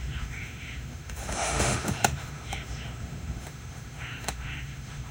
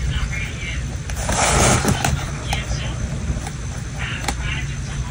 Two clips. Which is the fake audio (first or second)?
first